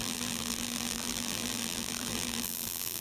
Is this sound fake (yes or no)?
yes